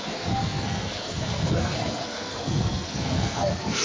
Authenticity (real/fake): fake